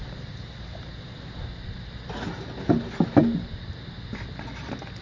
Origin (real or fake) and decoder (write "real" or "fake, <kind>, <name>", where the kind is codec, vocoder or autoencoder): real